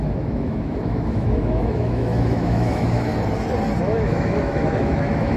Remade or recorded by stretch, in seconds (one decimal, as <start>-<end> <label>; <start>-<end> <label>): 0.0-3.1 remade; 3.1-3.8 recorded; 3.8-5.4 remade